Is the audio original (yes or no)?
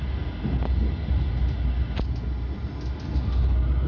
yes